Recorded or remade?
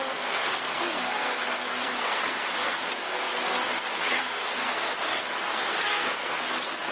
remade